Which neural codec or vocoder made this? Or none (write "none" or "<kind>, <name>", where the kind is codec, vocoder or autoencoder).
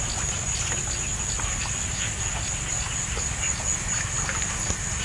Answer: none